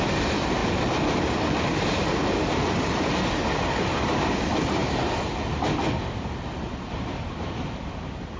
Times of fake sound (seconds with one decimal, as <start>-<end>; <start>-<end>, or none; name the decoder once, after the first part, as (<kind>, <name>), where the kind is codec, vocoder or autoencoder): none